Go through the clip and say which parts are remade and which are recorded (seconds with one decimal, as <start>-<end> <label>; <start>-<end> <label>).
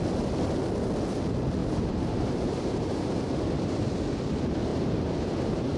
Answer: 0.0-1.6 recorded; 1.6-3.2 remade; 3.2-4.7 recorded; 4.7-5.8 remade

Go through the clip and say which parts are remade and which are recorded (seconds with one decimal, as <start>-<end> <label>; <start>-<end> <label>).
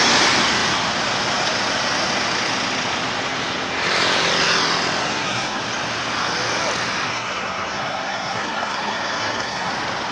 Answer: 0.0-5.0 recorded; 5.0-5.6 remade; 5.6-7.1 recorded; 7.1-9.7 remade; 9.7-10.1 recorded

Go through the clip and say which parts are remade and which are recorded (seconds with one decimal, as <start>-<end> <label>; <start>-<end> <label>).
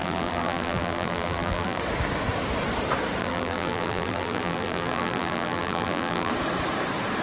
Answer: 0.0-1.8 remade; 1.8-3.2 recorded; 3.2-6.3 remade; 6.3-7.2 recorded